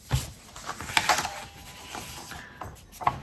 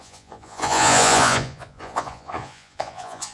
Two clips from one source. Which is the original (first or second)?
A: first